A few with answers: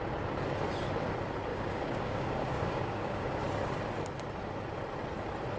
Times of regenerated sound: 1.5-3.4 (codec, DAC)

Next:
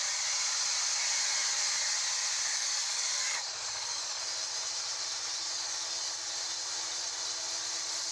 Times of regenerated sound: 2.5-4.2 (codec, DAC)